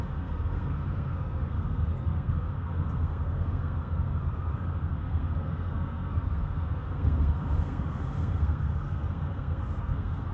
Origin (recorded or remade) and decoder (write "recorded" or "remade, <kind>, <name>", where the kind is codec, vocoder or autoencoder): remade, codec, SNAC